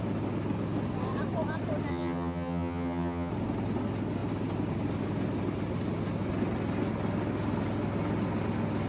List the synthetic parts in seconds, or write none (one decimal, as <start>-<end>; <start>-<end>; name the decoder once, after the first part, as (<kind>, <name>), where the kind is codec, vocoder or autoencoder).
1.9-3.3 (vocoder, HiFi-GAN)